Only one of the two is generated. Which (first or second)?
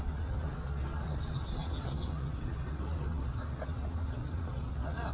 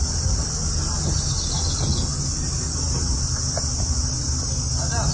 first